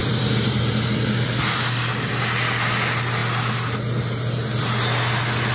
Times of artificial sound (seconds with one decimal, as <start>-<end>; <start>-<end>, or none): 0.0-2.2